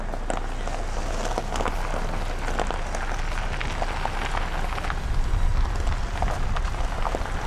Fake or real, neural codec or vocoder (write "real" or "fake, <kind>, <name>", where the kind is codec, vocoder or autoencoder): real